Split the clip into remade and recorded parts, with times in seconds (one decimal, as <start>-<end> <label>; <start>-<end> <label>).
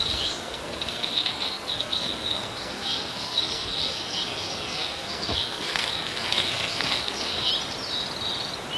0.0-7.5 remade; 7.5-8.8 recorded